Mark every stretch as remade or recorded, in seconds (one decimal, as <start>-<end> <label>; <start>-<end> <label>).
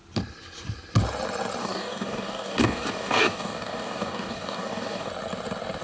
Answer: 0.0-1.6 recorded; 1.6-5.1 remade; 5.1-5.8 recorded